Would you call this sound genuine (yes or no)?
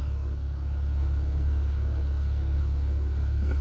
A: no